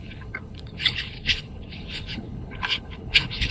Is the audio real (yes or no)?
no